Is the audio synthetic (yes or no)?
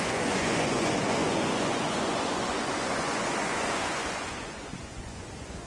yes